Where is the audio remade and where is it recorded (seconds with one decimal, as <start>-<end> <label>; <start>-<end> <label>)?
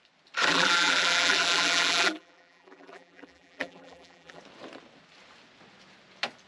0.0-0.5 recorded; 0.5-4.4 remade; 4.4-6.5 recorded